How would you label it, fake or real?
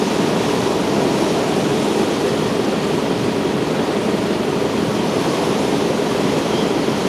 real